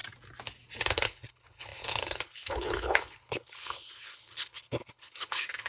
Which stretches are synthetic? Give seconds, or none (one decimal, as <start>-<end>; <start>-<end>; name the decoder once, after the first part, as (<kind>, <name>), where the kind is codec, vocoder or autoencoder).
0.8-5.7 (codec, HILCodec)